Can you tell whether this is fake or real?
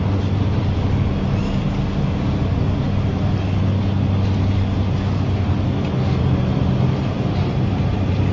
real